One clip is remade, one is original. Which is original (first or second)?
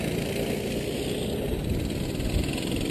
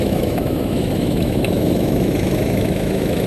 first